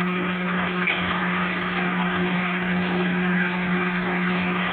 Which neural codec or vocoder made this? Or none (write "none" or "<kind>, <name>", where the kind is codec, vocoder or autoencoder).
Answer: codec, DAC